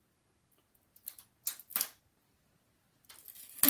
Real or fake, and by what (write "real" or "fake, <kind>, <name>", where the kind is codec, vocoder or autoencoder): real